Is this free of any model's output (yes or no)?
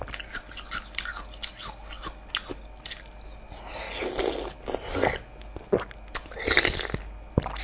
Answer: yes